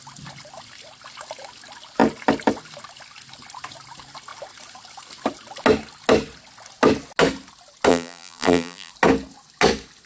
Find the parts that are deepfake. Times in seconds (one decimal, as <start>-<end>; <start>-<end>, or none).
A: 7.9-8.9